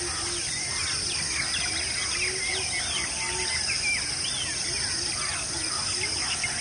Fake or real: real